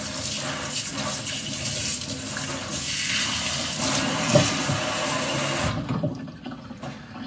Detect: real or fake real